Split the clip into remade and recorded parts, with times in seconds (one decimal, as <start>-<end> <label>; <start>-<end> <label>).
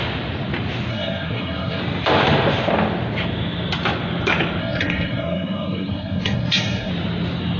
0.0-0.9 recorded; 0.9-1.8 remade; 1.8-4.6 recorded; 4.6-6.9 remade; 6.9-7.6 recorded